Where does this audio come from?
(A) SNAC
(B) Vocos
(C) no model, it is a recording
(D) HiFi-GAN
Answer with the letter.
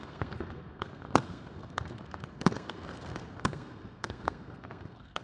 A